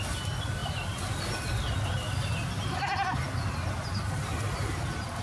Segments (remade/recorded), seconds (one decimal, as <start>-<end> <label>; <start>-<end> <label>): 0.0-5.2 recorded